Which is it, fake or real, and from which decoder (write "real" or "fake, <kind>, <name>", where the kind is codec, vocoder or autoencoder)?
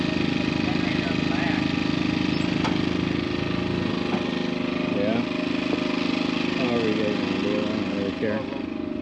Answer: real